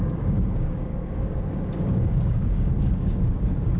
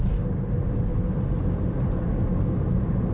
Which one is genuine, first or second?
second